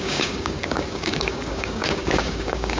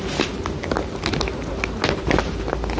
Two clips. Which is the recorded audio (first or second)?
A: second